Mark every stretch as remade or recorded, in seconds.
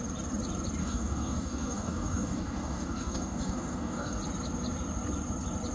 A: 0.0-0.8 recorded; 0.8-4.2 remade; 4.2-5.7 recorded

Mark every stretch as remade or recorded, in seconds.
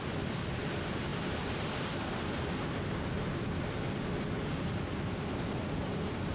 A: 0.0-6.3 recorded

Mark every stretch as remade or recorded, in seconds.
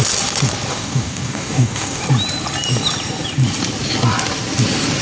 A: 0.0-0.7 recorded; 0.7-2.0 remade; 2.0-5.0 recorded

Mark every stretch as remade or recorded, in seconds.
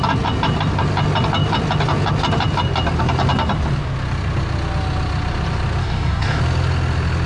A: 0.0-5.8 recorded; 5.8-6.4 remade; 6.4-7.3 recorded